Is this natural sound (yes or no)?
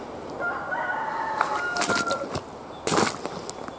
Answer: yes